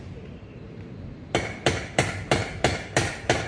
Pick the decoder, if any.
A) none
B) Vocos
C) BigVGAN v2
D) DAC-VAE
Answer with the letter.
C